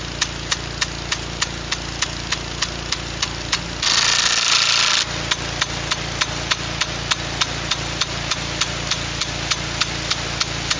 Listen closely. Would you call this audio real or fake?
real